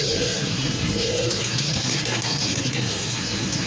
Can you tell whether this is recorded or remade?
remade